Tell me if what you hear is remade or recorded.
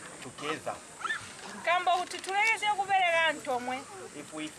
recorded